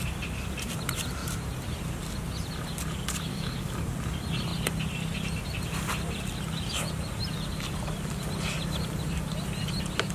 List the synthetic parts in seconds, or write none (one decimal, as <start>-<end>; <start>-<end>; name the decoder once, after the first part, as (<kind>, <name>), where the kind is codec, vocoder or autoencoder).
3.3-3.8 (codec, DAC)